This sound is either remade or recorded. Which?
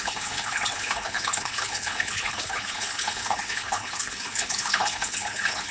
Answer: remade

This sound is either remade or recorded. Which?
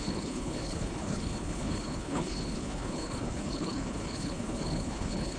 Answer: remade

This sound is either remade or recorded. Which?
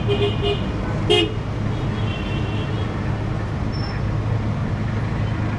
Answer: recorded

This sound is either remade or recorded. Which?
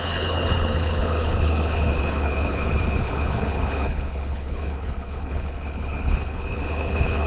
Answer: remade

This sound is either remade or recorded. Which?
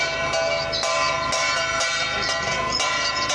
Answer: recorded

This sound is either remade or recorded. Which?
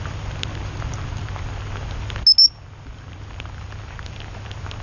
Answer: recorded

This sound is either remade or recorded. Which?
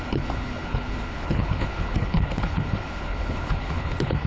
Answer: remade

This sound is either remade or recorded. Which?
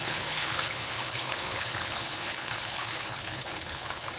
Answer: remade